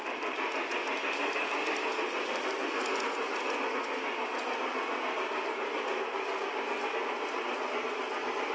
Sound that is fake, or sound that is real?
real